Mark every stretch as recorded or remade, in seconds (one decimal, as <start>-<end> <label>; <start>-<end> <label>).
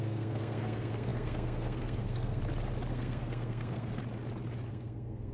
0.0-2.4 remade; 2.4-2.9 recorded; 2.9-4.0 remade; 4.0-4.7 recorded; 4.7-5.3 remade